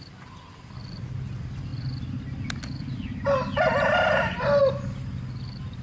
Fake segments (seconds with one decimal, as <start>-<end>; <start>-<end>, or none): none